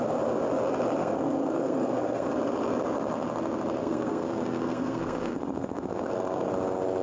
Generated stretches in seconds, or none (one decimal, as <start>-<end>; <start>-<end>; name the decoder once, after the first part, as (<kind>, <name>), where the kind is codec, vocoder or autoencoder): 1.0-2.3 (codec, SNAC); 3.8-6.5